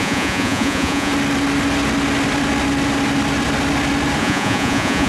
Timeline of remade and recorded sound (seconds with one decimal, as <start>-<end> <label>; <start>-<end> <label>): 0.0-1.1 remade; 1.1-4.2 recorded; 4.2-5.1 remade

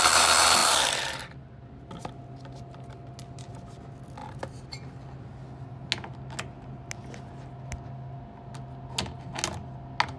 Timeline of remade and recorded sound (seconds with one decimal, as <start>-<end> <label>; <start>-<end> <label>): 0.0-10.2 recorded

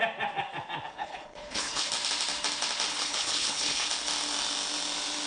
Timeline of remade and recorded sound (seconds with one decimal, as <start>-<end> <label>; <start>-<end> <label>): 0.0-0.9 recorded; 0.9-1.9 remade; 1.9-2.9 recorded; 2.9-3.9 remade; 3.9-5.3 recorded

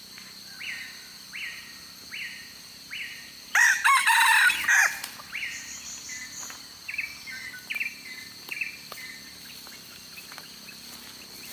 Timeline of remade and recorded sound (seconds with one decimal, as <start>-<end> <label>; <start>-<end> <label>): 0.0-11.5 recorded